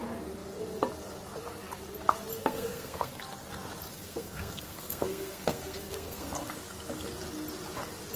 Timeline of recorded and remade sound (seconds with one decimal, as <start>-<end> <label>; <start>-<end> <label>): 0.0-2.4 recorded; 2.4-3.2 remade; 3.2-3.9 recorded; 3.9-6.3 remade; 6.3-8.2 recorded

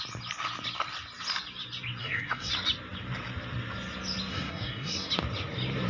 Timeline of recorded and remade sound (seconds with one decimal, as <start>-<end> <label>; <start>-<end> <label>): 0.0-2.0 recorded; 2.0-2.5 remade; 2.5-4.3 recorded; 4.3-5.1 remade; 5.1-5.9 recorded

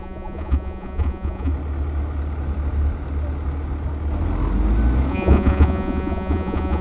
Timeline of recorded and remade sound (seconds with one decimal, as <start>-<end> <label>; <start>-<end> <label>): 0.0-1.5 remade; 1.5-5.1 recorded; 5.1-6.8 remade

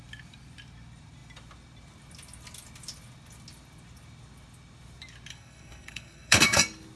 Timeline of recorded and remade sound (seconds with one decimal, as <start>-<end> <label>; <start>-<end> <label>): 0.0-5.3 recorded; 5.3-6.6 remade; 6.6-7.0 recorded